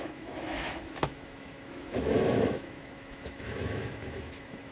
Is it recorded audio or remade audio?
remade